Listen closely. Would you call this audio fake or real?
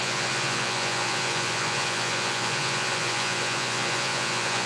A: fake